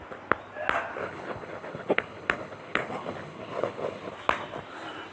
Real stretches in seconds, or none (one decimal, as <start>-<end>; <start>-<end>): 0.0-1.0; 4.1-5.1